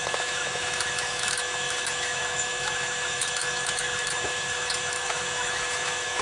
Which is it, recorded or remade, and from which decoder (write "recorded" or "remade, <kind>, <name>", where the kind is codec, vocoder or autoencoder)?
remade, autoencoder, DAC-VAE